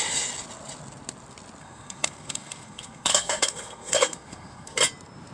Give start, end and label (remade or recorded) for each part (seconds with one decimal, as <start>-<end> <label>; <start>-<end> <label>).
0.0-1.6 recorded; 1.6-4.8 remade; 4.8-5.3 recorded

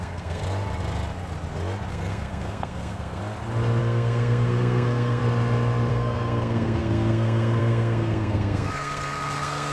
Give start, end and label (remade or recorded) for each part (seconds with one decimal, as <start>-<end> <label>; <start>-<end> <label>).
0.0-0.4 remade; 0.4-1.9 recorded; 1.9-3.2 remade; 3.2-3.8 recorded; 3.8-5.2 remade; 5.2-5.9 recorded; 5.9-9.7 remade

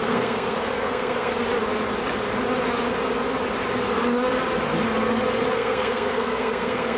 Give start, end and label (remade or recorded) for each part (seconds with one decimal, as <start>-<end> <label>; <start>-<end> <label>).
0.0-1.4 remade; 1.4-5.5 recorded; 5.5-7.0 remade

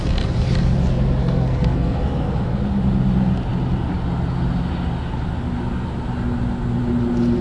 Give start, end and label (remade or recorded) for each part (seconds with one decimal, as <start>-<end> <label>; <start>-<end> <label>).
0.0-1.2 recorded; 1.2-2.6 remade; 2.6-7.4 recorded

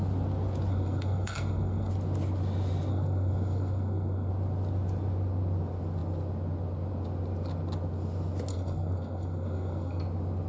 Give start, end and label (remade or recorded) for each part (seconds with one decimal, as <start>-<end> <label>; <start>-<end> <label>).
0.0-0.7 recorded; 0.7-1.9 remade; 1.9-2.9 recorded; 2.9-4.3 remade; 4.3-8.5 recorded; 8.5-10.0 remade; 10.0-10.5 recorded